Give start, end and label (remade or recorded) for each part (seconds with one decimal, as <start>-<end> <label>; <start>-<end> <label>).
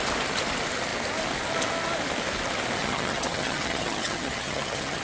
0.0-2.8 recorded; 2.8-5.0 remade